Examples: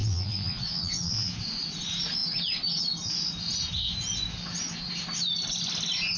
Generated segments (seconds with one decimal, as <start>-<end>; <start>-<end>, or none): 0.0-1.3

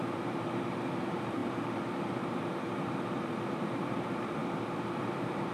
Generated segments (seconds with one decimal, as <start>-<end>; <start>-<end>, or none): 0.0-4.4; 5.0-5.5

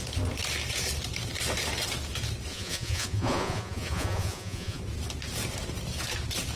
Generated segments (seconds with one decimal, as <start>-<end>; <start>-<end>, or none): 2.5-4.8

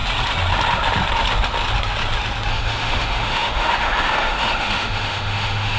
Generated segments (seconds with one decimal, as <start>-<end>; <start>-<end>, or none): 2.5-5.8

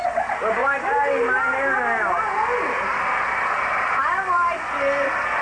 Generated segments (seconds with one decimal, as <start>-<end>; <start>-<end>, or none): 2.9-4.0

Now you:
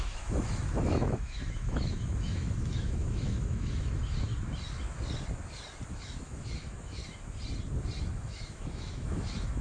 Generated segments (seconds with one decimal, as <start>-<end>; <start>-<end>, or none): 0.0-4.3; 5.9-7.0; 8.0-9.6